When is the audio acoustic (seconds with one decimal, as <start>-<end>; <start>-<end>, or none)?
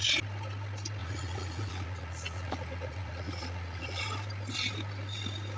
0.0-1.0; 4.0-5.6